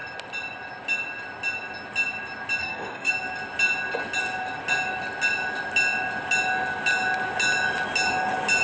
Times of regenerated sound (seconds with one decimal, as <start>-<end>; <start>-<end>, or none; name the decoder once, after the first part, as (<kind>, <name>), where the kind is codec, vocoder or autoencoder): 2.6-3.1 (codec, DAC)